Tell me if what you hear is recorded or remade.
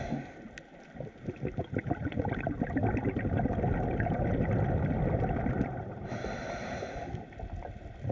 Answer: recorded